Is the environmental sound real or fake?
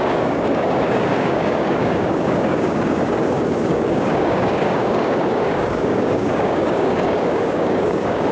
fake